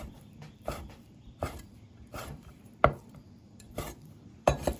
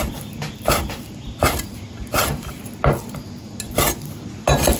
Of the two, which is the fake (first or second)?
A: first